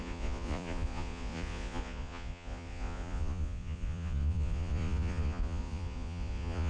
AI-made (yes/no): yes